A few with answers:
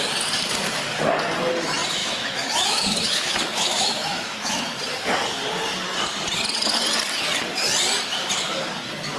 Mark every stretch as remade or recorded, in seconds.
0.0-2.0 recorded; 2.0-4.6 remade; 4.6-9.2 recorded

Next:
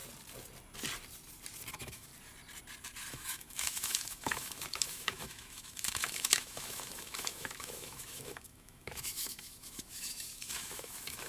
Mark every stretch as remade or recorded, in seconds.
0.0-1.7 recorded; 1.7-2.1 remade; 2.1-3.1 recorded; 3.1-11.3 remade

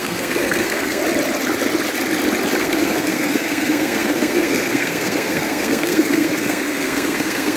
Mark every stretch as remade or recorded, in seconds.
0.0-1.0 remade; 1.0-2.6 recorded; 2.6-7.6 remade

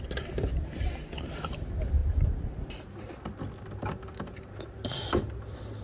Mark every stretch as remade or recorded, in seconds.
0.0-2.0 remade; 2.0-4.4 recorded; 4.4-5.8 remade

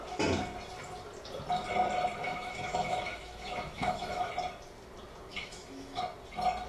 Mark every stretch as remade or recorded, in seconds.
0.0-2.2 recorded; 2.2-4.3 remade; 4.3-5.3 recorded; 5.3-6.0 remade; 6.0-6.7 recorded